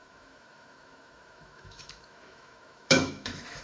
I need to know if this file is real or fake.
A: fake